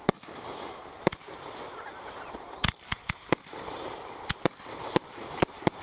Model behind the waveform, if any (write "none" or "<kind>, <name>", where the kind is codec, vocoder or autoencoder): vocoder, BigVGAN v2